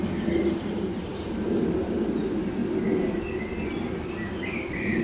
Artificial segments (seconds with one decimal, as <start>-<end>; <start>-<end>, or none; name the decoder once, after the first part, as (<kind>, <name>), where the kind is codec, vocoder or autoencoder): none